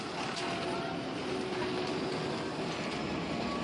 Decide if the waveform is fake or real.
real